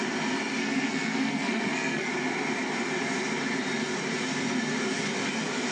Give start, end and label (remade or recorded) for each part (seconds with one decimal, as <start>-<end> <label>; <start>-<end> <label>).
0.0-0.6 recorded; 0.6-2.1 remade; 2.1-5.7 recorded